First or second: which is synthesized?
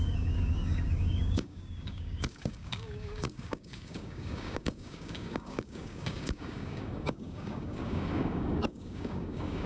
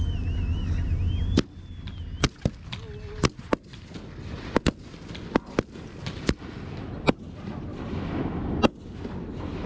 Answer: first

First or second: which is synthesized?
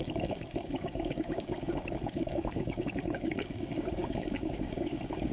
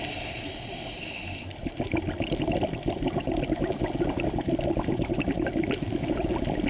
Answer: first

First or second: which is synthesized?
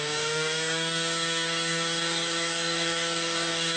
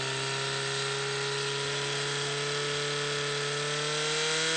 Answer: first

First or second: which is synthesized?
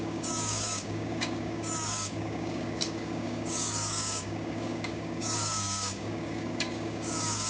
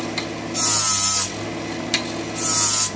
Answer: first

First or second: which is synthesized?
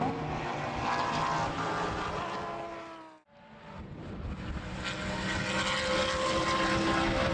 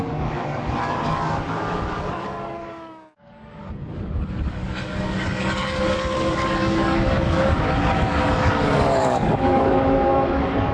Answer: second